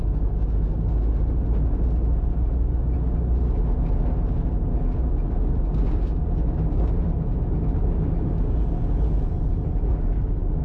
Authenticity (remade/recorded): recorded